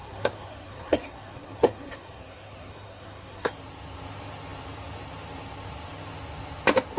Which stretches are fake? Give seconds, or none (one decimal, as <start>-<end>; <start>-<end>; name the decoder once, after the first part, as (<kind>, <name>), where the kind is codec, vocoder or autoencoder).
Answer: 0.0-3.5 (codec, SNAC)